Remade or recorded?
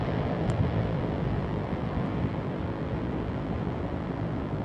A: remade